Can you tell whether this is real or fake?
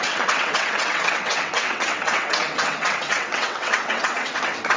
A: fake